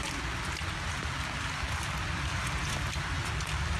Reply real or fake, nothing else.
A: real